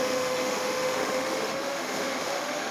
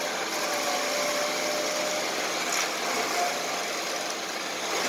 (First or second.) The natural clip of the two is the second